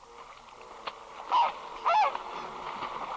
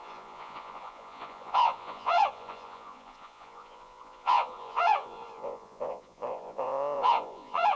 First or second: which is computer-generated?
second